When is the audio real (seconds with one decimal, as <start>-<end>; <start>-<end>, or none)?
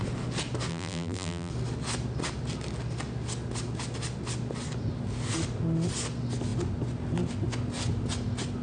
0.0-0.7; 1.5-8.6